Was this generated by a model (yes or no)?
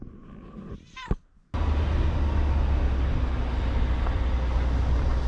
no